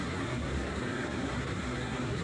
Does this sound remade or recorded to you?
remade